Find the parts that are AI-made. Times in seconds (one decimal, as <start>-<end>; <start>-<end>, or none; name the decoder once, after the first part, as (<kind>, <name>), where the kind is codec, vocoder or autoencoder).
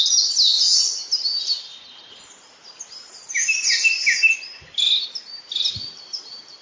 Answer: none